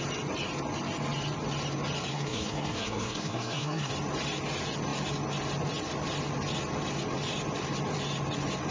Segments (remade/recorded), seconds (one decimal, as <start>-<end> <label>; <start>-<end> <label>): 0.0-2.1 recorded; 2.1-3.9 remade; 3.9-8.7 recorded